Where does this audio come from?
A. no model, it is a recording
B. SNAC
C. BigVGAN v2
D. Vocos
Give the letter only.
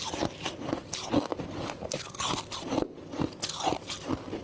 A